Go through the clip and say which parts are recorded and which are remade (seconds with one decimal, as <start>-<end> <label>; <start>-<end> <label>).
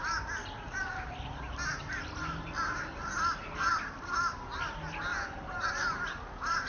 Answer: 0.0-0.8 recorded; 0.8-1.4 remade; 1.4-3.7 recorded; 3.7-4.6 remade; 4.6-6.7 recorded